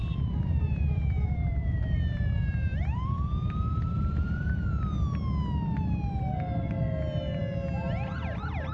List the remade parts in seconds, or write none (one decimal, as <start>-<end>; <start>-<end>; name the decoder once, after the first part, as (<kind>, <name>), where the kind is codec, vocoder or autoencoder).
0.0-3.6 (vocoder, BigVGAN v2)